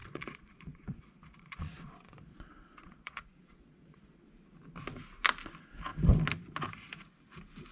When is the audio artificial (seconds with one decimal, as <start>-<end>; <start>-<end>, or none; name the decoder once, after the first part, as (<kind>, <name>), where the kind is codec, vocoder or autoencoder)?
0.0-4.3 (vocoder, Vocos)